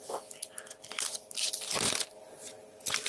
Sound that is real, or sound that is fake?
real